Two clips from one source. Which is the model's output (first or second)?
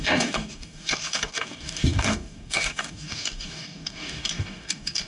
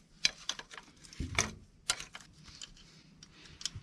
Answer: first